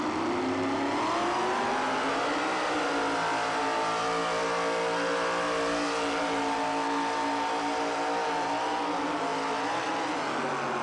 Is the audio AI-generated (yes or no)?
no